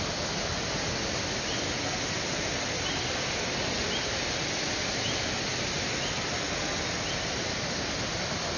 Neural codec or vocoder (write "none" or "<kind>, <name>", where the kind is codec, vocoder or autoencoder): none